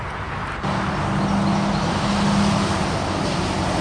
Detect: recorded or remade recorded